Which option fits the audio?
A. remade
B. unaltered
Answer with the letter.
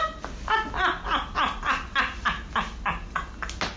B